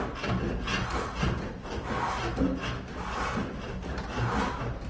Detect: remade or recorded recorded